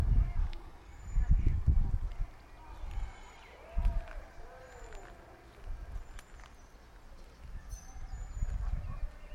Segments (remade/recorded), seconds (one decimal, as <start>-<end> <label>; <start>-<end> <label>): 0.0-0.4 recorded; 0.4-1.0 remade; 1.0-9.3 recorded